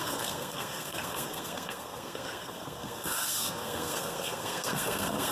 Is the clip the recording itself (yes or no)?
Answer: no